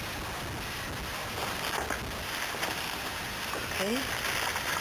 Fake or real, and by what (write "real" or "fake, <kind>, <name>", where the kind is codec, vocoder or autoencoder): real